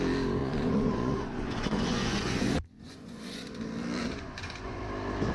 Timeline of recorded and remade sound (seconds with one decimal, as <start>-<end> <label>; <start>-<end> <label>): 0.0-0.4 recorded; 0.4-3.6 remade; 3.6-4.0 recorded; 4.0-4.8 remade; 4.8-5.3 recorded